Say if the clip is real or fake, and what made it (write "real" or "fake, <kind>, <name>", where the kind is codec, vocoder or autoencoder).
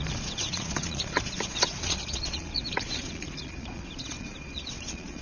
fake, vocoder, Vocos